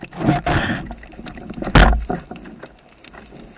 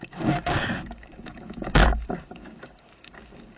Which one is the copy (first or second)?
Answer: second